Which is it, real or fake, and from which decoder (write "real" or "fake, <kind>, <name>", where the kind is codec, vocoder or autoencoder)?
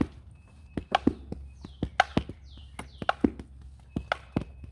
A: real